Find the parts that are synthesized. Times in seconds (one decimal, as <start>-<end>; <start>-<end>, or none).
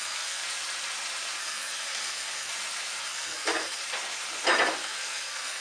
0.0-0.4; 1.4-2.5; 3.0-3.8; 4.7-5.6